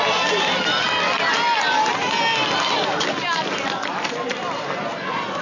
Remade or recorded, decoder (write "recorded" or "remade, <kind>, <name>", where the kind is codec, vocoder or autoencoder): recorded